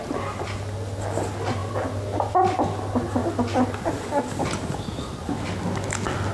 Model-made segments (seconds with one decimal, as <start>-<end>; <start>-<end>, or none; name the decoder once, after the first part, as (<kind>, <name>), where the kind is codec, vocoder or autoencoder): none